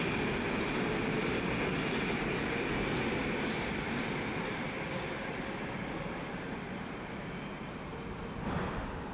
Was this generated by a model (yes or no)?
no